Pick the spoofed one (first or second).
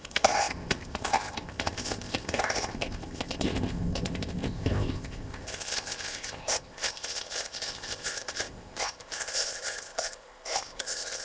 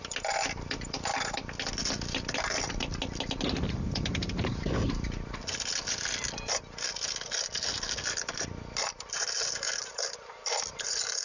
first